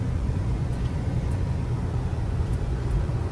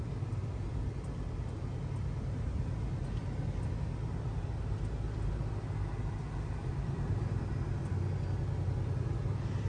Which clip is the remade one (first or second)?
first